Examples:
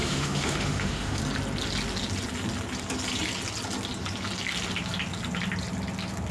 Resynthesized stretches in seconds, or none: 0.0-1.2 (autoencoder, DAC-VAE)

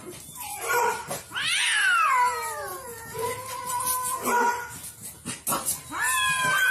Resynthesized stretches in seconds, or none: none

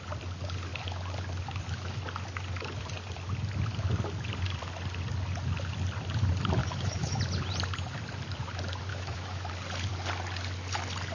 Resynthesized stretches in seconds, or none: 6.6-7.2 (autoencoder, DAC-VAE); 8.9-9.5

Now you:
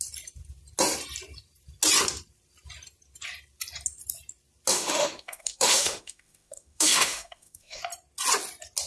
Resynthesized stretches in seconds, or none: 4.7-7.8 (autoencoder, DAC-VAE)